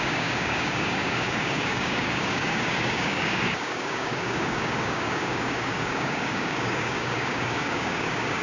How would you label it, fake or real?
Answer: fake